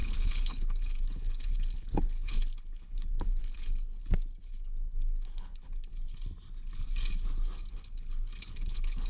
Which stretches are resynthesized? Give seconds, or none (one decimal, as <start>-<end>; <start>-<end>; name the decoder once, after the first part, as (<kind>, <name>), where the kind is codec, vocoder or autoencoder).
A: 0.0-3.9 (codec, HILCodec); 4.6-5.9; 7.7-9.1